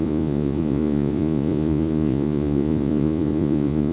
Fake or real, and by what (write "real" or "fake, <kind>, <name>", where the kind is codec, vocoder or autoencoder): fake, vocoder, Vocos